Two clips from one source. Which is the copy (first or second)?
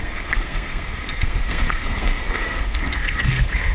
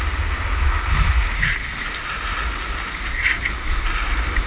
first